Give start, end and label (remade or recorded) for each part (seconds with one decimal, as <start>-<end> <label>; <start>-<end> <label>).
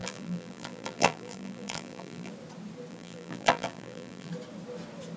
0.0-2.3 remade; 2.3-2.9 recorded; 2.9-4.3 remade; 4.3-5.2 recorded